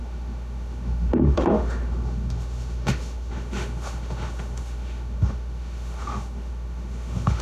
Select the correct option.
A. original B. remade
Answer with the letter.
B